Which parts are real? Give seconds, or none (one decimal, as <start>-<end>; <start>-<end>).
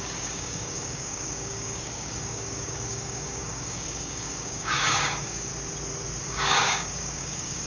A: 5.5-6.2